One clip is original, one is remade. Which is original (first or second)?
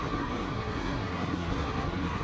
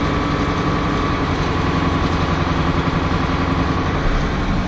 second